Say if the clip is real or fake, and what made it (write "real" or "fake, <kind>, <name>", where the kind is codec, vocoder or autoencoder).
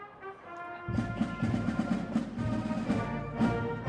fake, vocoder, BigVGAN v2